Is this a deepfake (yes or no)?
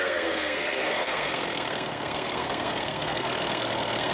yes